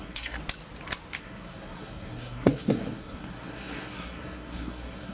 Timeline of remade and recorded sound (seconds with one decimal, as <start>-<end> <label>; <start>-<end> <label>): 0.0-0.4 remade; 0.4-1.2 recorded; 1.2-5.1 remade